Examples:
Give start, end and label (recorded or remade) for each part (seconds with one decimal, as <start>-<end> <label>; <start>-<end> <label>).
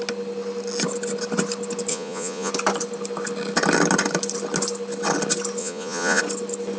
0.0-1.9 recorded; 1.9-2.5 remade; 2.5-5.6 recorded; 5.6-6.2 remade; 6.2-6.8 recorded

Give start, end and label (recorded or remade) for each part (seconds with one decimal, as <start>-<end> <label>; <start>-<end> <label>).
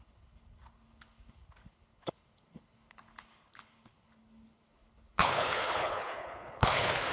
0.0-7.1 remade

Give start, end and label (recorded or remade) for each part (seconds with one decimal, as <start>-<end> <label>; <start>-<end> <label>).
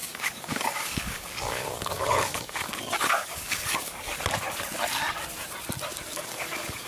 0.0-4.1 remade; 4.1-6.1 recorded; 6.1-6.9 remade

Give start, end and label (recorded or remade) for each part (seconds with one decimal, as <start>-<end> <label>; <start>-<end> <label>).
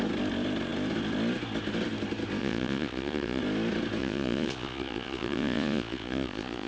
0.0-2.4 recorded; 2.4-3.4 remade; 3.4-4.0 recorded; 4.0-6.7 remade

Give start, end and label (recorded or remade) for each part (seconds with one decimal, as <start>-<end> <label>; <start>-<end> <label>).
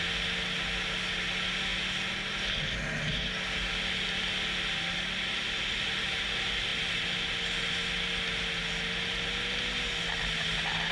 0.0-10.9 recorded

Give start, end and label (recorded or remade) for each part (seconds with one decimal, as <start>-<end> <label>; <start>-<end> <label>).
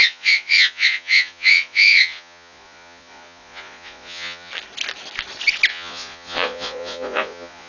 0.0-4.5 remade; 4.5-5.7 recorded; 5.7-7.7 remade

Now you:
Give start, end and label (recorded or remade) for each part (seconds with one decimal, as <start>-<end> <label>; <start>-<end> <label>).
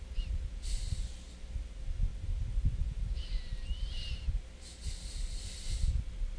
0.0-2.1 recorded; 2.1-5.9 remade; 5.9-6.4 recorded